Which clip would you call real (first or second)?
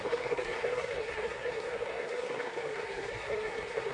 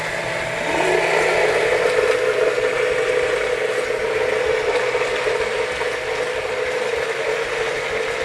second